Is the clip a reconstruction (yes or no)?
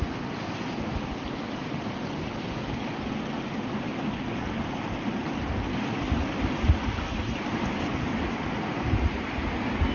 no